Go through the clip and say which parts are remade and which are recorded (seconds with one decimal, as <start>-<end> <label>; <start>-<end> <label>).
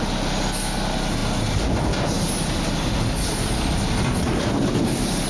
0.0-5.3 recorded